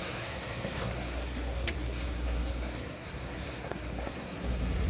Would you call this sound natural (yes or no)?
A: no